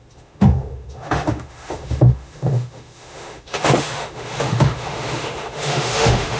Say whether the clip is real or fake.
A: fake